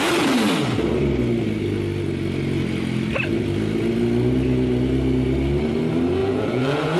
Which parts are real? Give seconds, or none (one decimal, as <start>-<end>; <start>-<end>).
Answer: 0.0-6.2